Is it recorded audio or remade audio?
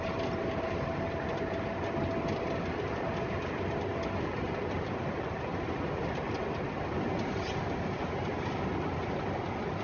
recorded